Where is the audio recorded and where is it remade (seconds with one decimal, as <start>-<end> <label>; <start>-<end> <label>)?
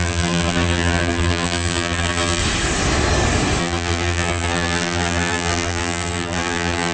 0.0-2.4 remade; 2.4-3.6 recorded; 3.6-6.9 remade